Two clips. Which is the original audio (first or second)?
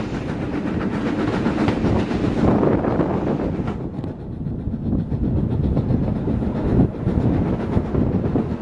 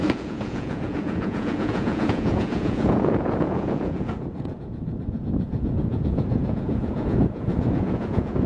first